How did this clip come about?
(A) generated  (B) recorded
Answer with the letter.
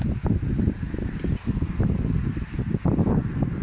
B